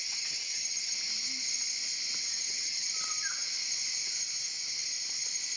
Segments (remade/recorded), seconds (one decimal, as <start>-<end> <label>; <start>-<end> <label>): 0.0-0.9 remade; 0.9-2.3 recorded; 2.3-2.9 remade; 2.9-5.6 recorded